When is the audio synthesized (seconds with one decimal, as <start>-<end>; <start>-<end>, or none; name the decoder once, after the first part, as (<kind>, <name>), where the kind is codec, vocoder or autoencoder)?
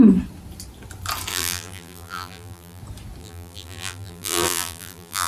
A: 1.3-2.8 (vocoder, BigVGAN v2); 3.2-5.3